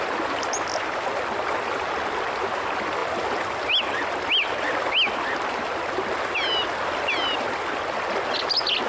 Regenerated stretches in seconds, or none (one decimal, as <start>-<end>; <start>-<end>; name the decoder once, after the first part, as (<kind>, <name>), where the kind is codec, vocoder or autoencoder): none